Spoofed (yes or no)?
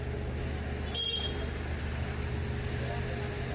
no